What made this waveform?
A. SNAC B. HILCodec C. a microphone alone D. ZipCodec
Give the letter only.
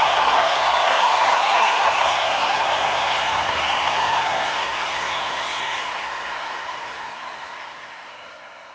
A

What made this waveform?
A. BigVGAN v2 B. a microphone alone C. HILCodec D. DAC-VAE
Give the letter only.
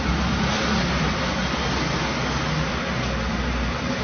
B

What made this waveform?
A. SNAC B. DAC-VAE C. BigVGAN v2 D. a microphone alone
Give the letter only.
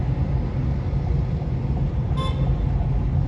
D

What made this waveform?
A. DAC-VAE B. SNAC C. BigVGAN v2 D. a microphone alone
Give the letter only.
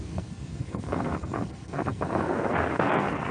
B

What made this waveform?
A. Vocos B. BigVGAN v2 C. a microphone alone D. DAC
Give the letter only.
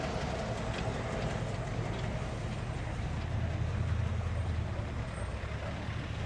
C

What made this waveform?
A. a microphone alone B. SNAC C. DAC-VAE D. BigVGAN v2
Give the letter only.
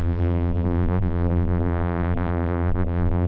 D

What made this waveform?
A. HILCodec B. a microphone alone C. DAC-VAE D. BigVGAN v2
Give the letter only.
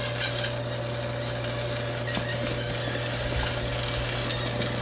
B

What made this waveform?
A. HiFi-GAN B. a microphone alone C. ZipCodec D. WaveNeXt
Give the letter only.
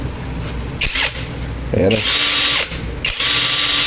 B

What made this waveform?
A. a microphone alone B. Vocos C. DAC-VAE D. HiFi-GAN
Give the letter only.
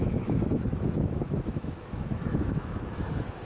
C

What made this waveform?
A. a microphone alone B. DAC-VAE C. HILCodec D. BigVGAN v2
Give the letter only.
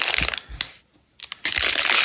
A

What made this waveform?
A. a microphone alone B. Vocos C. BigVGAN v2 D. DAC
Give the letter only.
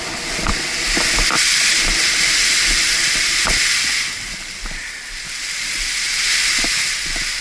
A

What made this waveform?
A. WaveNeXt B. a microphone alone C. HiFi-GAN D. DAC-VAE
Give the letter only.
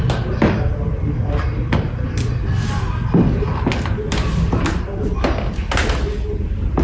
B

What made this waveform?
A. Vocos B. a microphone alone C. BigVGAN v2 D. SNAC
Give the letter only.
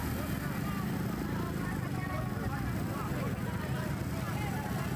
B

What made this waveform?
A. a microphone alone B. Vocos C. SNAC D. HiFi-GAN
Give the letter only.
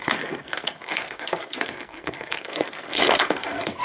C